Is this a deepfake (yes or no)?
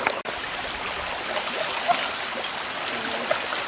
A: no